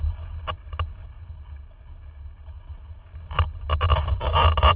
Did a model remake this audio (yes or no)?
no